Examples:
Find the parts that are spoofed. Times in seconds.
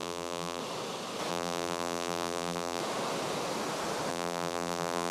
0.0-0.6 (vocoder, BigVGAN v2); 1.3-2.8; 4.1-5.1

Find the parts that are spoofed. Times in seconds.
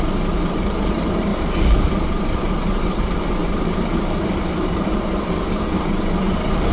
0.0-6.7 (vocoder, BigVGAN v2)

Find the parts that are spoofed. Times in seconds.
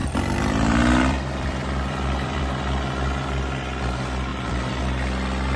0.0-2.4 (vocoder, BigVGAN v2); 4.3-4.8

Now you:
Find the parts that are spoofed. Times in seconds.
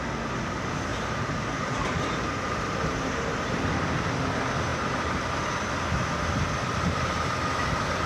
0.9-3.6 (vocoder, BigVGAN v2); 4.7-5.4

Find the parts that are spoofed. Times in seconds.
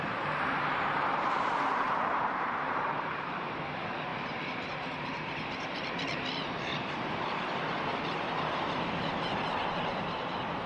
0.0-10.7 (vocoder, BigVGAN v2)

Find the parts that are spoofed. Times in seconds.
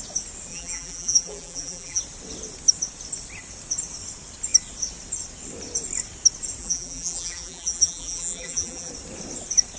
0.5-2.0 (vocoder, BigVGAN v2); 6.6-8.9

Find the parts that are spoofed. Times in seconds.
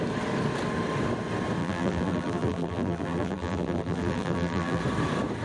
1.6-4.8 (vocoder, BigVGAN v2)